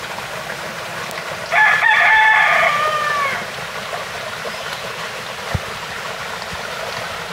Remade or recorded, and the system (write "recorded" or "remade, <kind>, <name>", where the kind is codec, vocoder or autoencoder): recorded